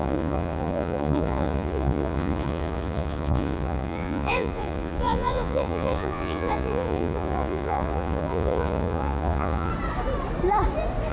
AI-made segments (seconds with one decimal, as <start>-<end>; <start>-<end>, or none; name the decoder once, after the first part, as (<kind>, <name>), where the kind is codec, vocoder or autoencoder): 0.0-9.7 (vocoder, Vocos)